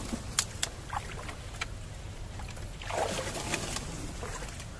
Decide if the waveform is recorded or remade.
recorded